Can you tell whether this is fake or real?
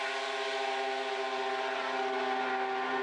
real